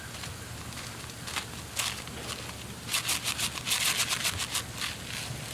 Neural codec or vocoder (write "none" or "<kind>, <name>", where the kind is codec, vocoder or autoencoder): none